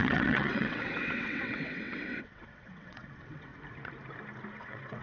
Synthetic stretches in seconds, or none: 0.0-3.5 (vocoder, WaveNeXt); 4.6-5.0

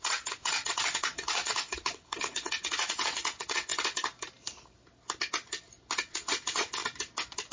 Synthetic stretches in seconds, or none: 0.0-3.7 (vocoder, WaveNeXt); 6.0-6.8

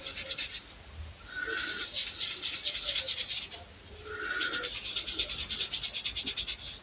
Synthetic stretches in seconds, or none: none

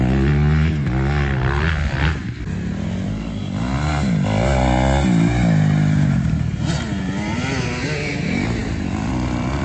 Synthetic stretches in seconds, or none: none

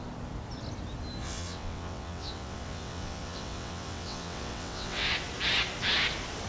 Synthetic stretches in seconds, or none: 1.2-5.1 (vocoder, WaveNeXt)

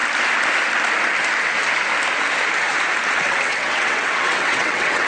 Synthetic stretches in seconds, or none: 3.1-5.1 (vocoder, WaveNeXt)

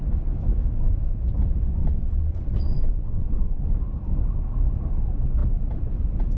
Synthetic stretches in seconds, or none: 1.8-3.6 (vocoder, WaveNeXt)

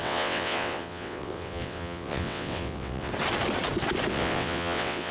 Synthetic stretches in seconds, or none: 0.0-3.1 (vocoder, WaveNeXt); 4.1-5.1